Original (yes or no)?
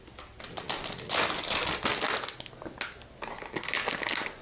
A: yes